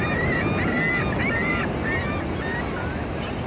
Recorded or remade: recorded